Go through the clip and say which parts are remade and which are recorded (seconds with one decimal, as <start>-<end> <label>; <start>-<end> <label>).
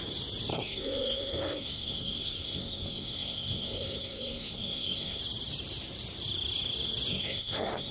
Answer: 0.0-0.5 recorded; 0.5-5.2 remade; 5.2-7.1 recorded; 7.1-7.9 remade